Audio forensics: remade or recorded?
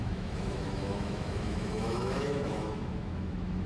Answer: remade